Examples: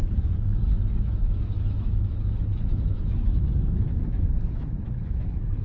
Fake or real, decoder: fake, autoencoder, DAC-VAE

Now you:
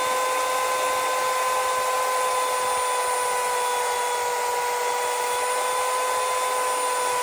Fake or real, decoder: real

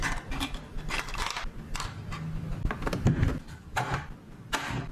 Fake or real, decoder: fake, vocoder, BigVGAN v2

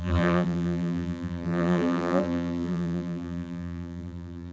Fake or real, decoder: fake, vocoder, BigVGAN v2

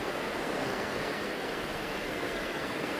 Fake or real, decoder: fake, codec, SNAC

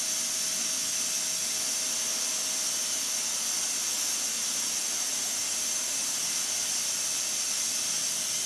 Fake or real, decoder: real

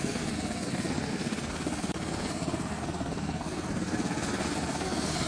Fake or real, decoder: fake, codec, SNAC